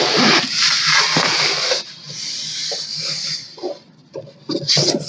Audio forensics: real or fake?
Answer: real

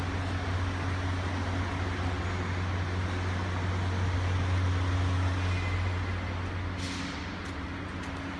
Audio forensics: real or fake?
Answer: real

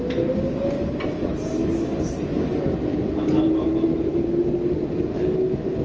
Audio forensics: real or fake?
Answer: real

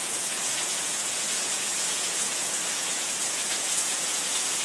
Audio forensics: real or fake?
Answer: fake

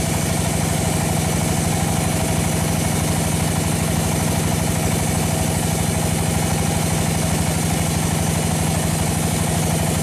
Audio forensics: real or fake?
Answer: real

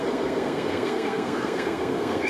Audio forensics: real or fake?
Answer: fake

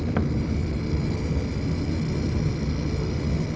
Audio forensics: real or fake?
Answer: real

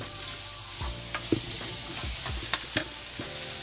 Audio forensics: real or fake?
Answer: real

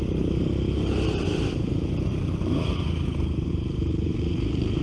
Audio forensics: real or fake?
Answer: fake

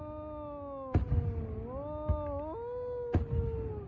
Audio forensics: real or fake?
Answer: real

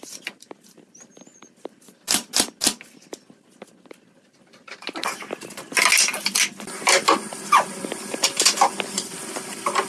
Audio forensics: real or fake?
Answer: real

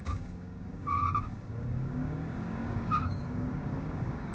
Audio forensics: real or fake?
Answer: fake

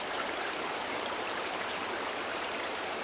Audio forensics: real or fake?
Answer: fake